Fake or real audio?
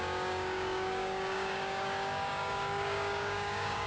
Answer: fake